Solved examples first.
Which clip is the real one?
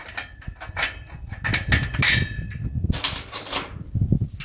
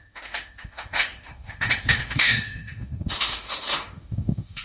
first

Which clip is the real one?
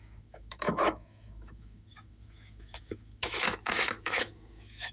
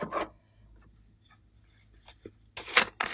second